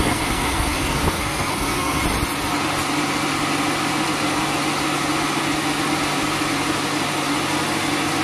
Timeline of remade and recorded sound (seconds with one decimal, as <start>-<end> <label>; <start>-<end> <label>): 0.0-2.0 remade; 2.0-8.2 recorded